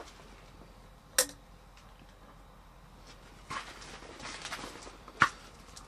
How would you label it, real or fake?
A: real